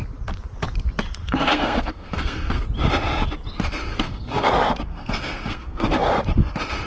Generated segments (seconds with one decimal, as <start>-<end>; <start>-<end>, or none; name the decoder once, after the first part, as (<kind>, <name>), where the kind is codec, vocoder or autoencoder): 1.2-2.6 (codec, SNAC); 3.9-4.5; 4.9-6.1